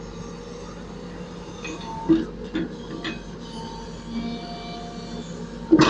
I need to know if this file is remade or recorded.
recorded